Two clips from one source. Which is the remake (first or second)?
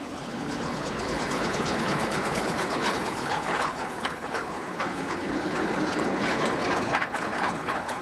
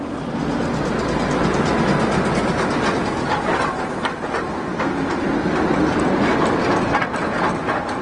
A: first